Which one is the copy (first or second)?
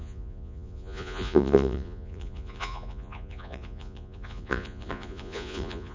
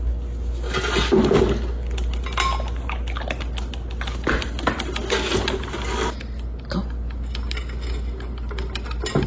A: first